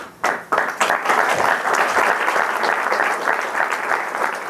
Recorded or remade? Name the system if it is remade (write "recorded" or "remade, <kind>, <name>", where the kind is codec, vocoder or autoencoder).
recorded